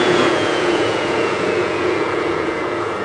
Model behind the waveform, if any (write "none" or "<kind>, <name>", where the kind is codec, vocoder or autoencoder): vocoder, Vocos